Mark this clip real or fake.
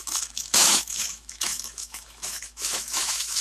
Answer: fake